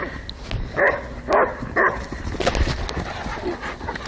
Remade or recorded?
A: recorded